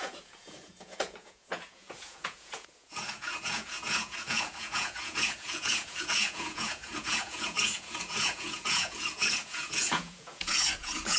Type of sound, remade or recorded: remade